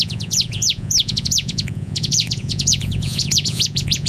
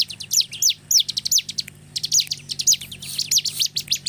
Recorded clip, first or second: second